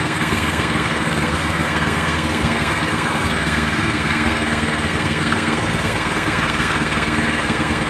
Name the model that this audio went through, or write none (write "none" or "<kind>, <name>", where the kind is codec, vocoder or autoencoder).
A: codec, SNAC